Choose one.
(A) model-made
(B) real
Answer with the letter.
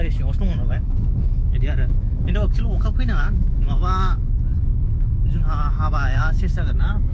A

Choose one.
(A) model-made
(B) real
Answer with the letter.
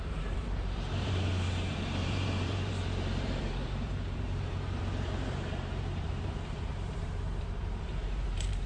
A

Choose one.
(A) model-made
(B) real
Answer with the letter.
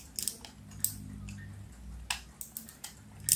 B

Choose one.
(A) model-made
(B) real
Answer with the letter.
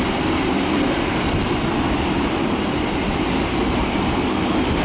B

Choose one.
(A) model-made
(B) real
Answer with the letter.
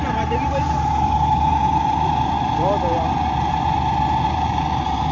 A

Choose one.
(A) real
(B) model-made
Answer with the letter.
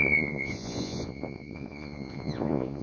B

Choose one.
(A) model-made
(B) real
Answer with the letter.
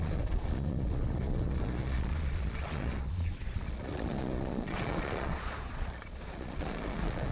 A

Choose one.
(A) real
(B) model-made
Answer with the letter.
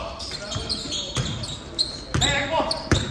A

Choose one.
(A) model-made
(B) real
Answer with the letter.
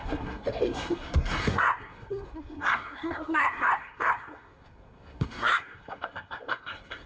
A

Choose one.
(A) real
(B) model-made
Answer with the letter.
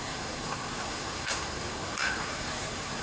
B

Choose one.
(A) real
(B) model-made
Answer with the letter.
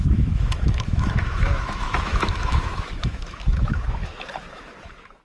B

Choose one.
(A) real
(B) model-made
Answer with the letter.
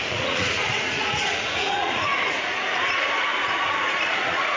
B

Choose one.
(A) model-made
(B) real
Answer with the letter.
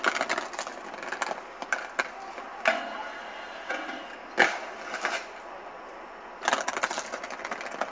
B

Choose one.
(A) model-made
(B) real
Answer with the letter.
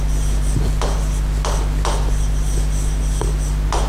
B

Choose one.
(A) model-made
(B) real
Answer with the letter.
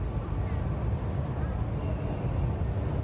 B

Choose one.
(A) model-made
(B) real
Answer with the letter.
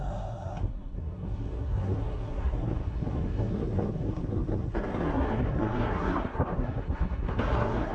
A